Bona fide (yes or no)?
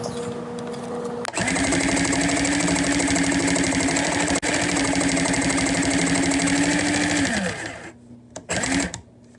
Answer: yes